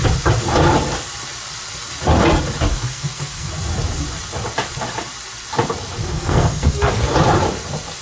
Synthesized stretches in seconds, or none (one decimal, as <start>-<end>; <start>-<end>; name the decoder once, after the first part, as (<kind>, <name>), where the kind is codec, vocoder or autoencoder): 2.7-3.5 (codec, SNAC); 6.0-7.1